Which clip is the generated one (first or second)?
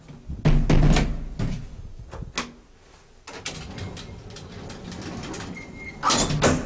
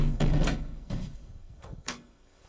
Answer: second